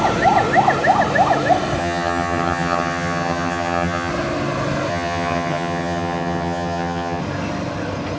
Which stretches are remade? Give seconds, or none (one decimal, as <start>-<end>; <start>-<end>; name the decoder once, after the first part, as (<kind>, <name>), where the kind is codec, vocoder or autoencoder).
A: 1.8-4.1 (vocoder, HiFi-GAN); 4.9-7.2